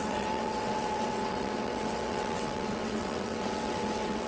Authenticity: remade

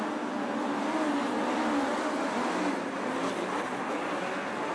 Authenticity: recorded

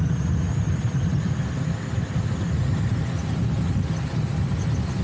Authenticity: recorded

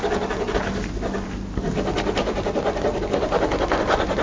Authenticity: recorded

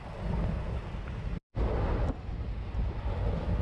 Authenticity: recorded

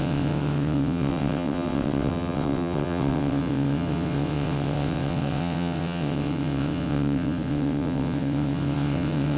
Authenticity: remade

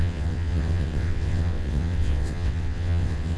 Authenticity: remade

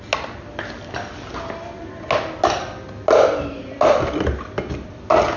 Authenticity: recorded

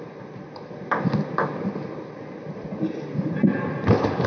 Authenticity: recorded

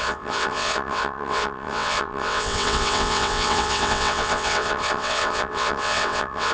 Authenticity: remade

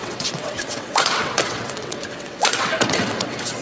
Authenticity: remade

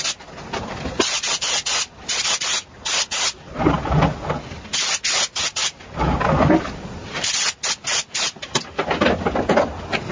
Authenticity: recorded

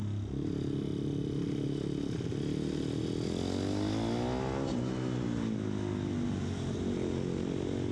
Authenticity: recorded